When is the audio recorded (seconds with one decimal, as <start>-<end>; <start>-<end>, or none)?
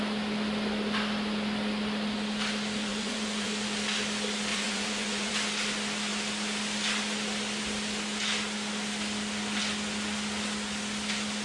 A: 0.0-2.9; 3.5-4.5; 5.3-11.4